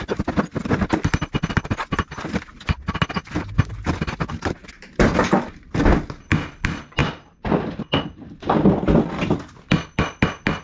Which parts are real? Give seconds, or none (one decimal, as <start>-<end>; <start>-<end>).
0.0-10.6